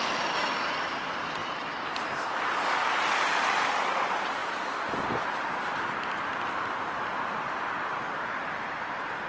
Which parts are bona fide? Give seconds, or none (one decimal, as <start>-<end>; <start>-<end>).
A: none